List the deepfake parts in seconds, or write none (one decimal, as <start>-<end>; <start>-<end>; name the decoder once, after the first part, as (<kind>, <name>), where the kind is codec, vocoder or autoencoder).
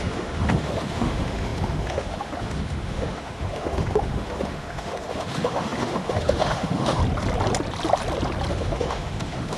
0.0-7.0 (autoencoder, DAC-VAE); 8.5-9.6